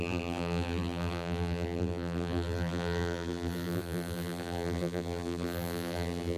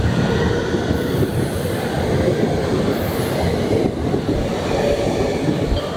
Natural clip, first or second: second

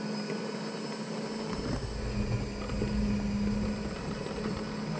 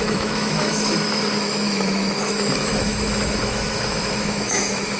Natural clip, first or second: first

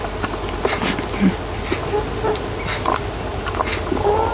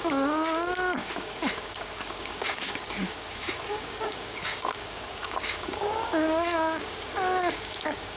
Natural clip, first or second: first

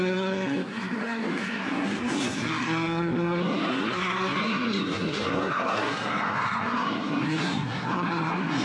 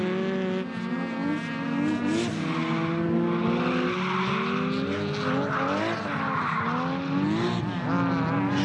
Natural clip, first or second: second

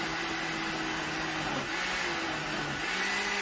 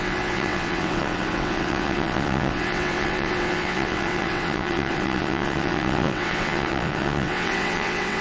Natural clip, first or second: first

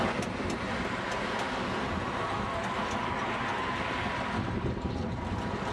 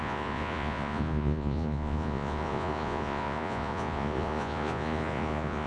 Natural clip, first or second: first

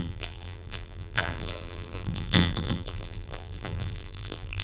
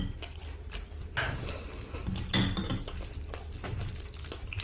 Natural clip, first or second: second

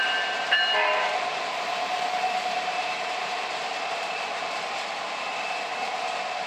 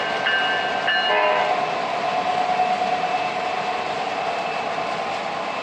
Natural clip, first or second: second